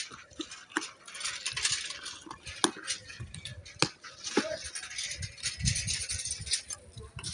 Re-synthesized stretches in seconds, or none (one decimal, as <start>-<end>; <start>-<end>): none